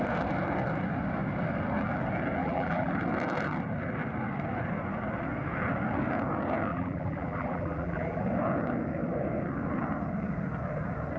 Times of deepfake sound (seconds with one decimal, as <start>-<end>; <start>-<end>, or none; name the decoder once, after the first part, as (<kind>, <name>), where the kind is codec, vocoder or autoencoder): 2.4-2.9 (vocoder, BigVGAN v2); 6.7-8.2